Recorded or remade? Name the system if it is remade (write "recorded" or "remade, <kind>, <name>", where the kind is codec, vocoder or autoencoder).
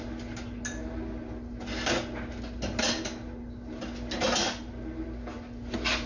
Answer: recorded